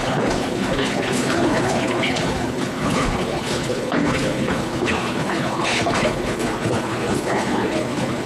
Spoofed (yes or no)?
yes